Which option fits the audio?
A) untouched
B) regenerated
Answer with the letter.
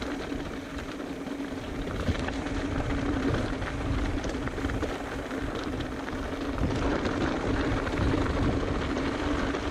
B